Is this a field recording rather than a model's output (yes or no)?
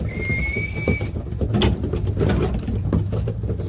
yes